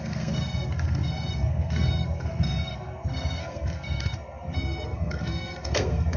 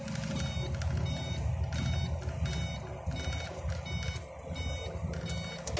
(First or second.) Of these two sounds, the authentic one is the second